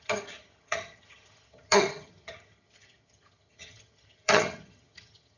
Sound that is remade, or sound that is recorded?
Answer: remade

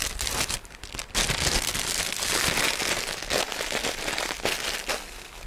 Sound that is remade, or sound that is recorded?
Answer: recorded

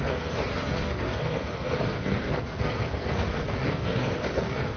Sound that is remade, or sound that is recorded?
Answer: remade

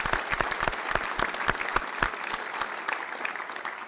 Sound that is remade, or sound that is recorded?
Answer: recorded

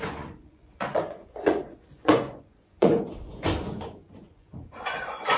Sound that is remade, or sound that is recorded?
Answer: remade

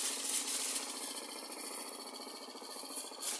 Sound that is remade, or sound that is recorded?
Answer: recorded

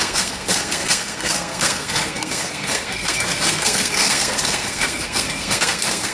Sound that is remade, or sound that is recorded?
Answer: remade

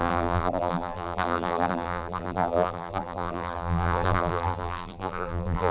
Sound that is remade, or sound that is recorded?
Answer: remade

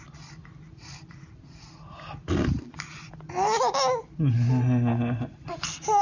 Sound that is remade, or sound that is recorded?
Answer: recorded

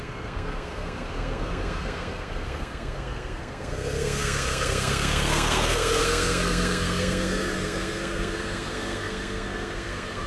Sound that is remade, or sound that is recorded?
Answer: remade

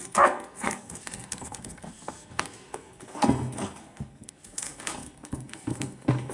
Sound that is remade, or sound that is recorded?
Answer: remade